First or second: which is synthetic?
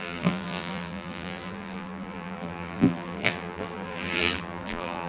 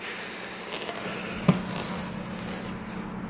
first